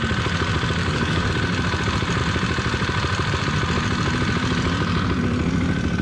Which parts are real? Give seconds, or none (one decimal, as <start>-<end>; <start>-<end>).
0.0-0.8; 1.3-6.0